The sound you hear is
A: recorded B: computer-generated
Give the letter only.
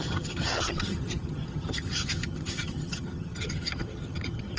B